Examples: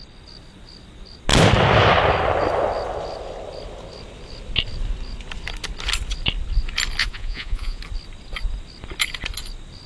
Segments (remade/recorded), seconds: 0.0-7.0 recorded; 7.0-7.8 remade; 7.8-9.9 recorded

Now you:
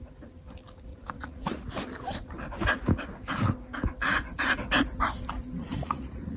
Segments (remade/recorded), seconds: 0.0-0.9 recorded; 0.9-1.7 remade; 1.7-5.6 recorded; 5.6-6.4 remade

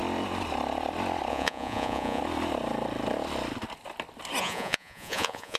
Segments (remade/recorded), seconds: 0.0-1.3 recorded; 1.3-2.2 remade; 2.2-4.4 recorded; 4.4-5.6 remade